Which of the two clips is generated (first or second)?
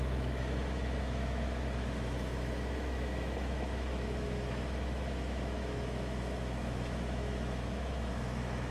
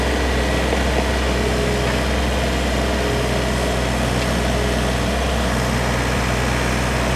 first